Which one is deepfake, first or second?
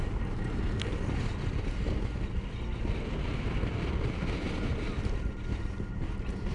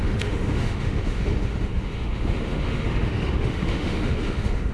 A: second